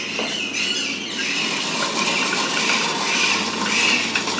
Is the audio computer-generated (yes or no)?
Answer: no